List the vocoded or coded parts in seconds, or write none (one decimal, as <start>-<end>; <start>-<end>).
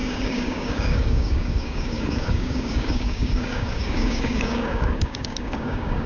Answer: 0.0-6.1